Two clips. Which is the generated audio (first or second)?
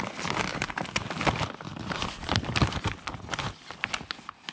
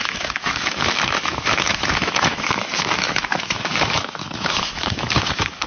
second